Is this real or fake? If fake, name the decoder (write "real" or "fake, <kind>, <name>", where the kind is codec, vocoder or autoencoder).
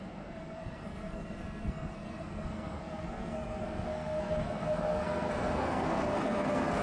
fake, codec, SNAC